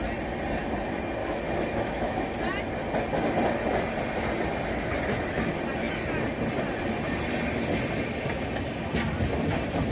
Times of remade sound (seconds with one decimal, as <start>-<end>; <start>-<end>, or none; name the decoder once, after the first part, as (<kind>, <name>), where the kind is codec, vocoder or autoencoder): 1.2-2.3 (autoencoder, DAC-VAE)